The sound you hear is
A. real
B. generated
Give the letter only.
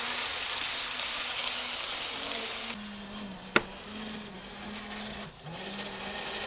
A